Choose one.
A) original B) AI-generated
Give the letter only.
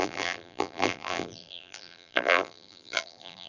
B